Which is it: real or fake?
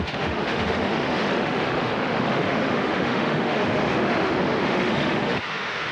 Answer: fake